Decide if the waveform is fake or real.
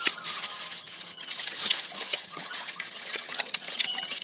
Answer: fake